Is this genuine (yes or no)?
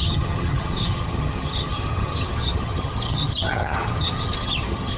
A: no